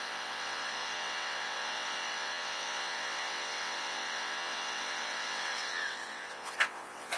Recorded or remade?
remade